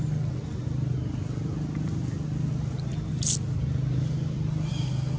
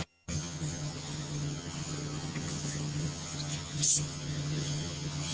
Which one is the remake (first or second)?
second